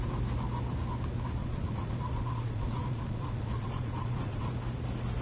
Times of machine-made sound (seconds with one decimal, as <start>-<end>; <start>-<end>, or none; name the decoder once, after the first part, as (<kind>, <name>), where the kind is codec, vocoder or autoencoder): 1.4-4.5 (vocoder, Vocos)